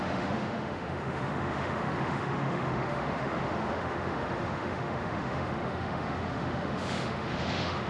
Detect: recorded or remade remade